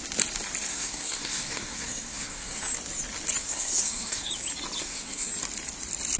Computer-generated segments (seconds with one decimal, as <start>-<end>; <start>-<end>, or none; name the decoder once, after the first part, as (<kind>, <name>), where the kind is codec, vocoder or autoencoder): 0.7-2.6 (codec, SNAC); 3.4-4.3; 4.8-5.3